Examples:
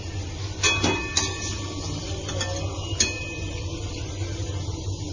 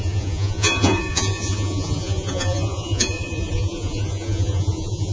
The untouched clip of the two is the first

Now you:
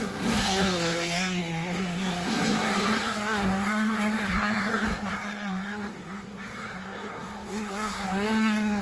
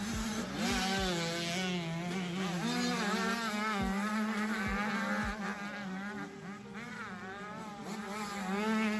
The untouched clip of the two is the second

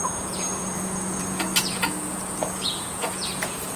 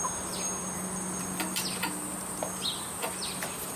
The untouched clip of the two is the second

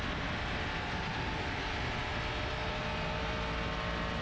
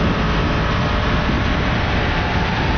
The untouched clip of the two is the first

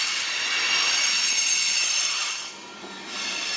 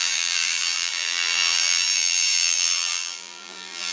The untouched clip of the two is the first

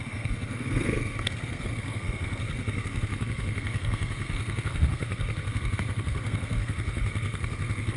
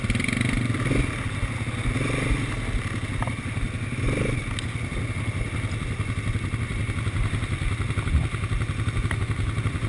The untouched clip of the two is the second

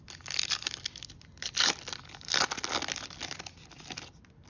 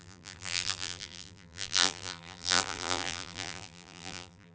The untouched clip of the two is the first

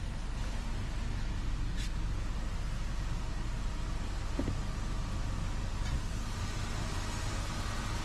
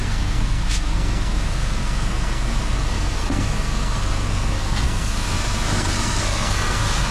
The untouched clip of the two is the first